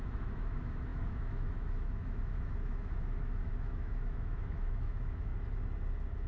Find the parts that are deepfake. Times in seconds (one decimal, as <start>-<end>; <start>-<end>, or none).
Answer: 0.0-5.3